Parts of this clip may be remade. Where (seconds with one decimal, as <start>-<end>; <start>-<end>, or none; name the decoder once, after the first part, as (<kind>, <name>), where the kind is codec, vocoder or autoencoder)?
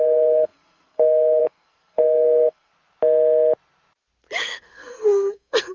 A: 0.0-2.7 (codec, SNAC); 4.4-5.7